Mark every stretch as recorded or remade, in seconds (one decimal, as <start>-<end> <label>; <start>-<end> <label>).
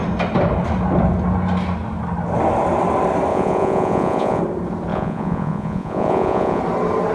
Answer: 0.0-3.3 recorded; 3.3-4.4 remade; 4.4-4.9 recorded; 4.9-6.6 remade; 6.6-7.1 recorded